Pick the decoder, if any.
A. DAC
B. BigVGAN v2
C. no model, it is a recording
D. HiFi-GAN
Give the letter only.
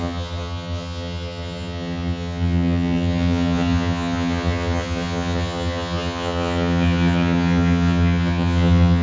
D